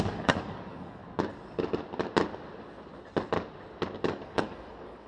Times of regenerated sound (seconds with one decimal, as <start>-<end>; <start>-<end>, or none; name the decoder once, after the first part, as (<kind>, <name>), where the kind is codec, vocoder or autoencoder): 0.0-1.0 (codec, DAC); 4.1-5.1

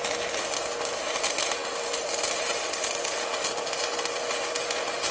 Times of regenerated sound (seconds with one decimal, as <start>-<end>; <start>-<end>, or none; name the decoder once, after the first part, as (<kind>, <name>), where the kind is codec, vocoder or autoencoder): none

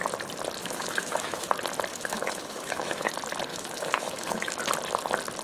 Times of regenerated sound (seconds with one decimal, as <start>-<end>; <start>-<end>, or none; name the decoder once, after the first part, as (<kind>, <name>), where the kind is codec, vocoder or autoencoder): 0.6-1.5 (autoencoder, DAC-VAE); 1.9-3.1; 3.5-4.6

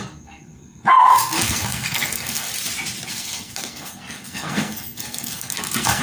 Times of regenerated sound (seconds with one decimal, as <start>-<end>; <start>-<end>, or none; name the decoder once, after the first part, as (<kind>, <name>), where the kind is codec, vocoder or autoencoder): 0.0-2.5 (codec, SNAC); 3.1-6.0

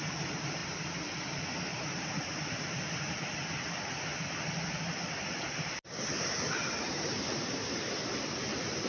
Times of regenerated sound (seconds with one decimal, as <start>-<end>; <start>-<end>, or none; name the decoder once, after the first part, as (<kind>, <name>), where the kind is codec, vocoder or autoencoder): none

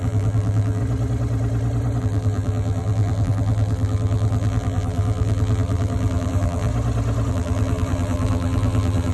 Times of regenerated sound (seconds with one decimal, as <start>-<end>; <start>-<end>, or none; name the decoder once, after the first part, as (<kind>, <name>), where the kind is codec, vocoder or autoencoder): 0.0-0.8 (vocoder, BigVGAN v2); 2.0-6.7; 7.3-9.1